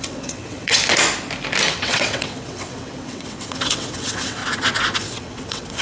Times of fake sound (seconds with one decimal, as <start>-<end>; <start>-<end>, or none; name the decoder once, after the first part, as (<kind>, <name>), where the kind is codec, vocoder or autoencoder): 0.0-0.8 (vocoder, WaveNeXt); 1.7-4.4; 5.0-5.8